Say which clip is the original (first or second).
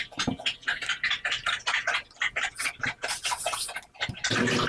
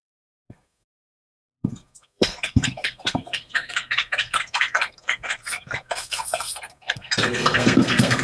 first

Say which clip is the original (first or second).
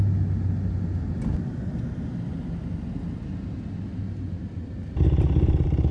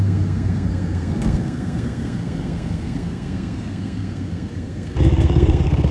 first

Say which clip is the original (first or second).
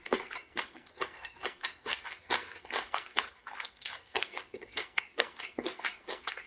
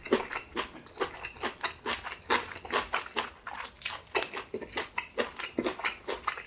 second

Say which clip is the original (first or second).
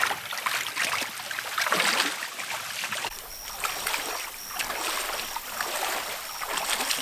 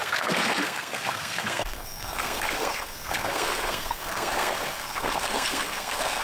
first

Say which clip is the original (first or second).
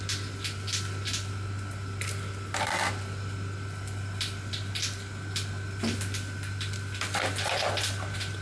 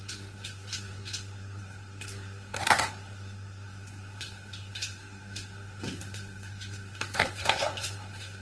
first